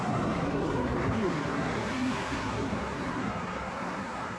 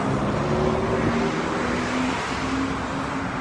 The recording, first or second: second